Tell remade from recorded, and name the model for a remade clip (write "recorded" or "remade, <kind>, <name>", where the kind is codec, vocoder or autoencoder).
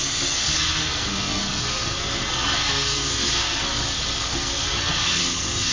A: remade, codec, SNAC